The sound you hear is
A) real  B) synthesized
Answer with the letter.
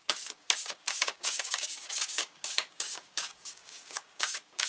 B